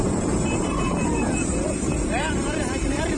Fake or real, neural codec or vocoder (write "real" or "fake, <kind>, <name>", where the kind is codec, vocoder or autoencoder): fake, vocoder, BigVGAN v2